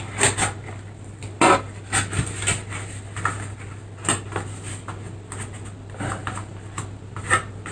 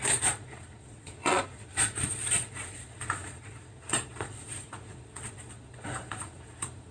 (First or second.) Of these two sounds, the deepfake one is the second